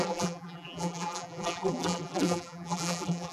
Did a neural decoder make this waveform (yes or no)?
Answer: yes